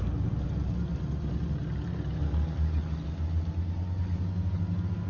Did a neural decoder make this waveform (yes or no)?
no